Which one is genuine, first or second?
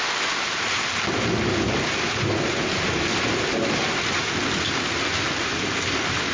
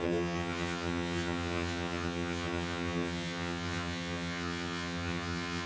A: first